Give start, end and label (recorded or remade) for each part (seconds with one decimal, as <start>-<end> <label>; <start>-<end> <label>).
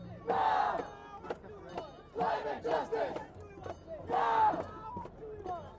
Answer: 0.0-5.8 recorded